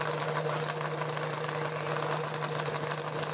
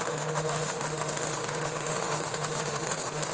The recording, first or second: first